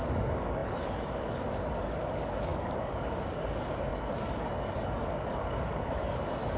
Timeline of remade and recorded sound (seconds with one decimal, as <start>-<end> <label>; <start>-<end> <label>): 0.0-6.6 remade